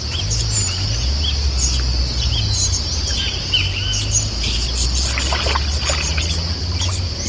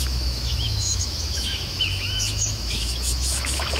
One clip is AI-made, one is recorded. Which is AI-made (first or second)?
second